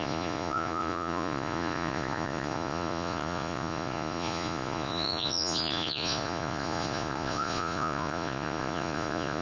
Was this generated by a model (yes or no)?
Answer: yes